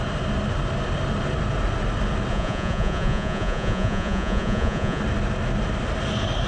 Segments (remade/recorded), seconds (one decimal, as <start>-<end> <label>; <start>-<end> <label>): 0.0-2.3 recorded; 2.3-5.0 remade; 5.0-6.5 recorded